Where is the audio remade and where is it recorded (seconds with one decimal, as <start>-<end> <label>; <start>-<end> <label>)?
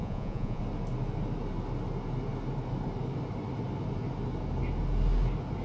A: 0.0-0.6 remade; 0.6-5.6 recorded